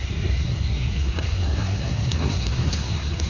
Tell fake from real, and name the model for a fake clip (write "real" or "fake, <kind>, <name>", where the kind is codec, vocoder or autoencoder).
fake, codec, SNAC